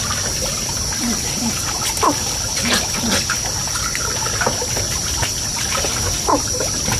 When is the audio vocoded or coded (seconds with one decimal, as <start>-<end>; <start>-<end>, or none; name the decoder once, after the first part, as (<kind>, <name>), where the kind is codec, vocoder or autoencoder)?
0.0-1.6 (vocoder, BigVGAN v2); 4.7-7.0

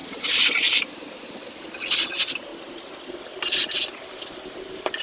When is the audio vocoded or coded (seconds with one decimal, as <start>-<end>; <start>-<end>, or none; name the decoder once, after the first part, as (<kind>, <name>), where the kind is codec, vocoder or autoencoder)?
0.0-1.5 (vocoder, BigVGAN v2)